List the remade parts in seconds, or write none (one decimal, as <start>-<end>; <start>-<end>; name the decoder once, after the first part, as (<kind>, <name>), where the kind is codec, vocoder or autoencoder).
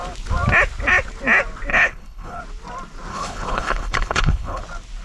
1.7-2.4 (codec, HILCodec); 3.1-4.6